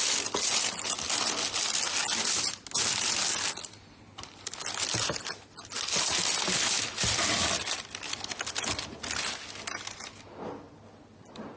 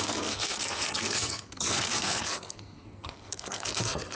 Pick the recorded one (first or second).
first